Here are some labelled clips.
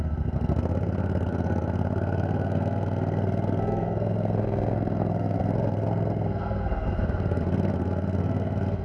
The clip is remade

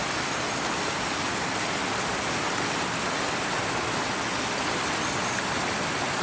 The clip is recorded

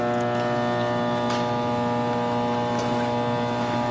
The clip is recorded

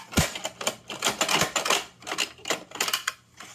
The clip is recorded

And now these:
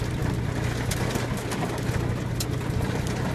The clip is recorded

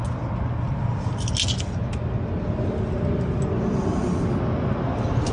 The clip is recorded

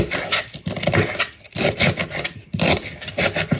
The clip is recorded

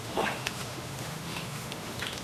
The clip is remade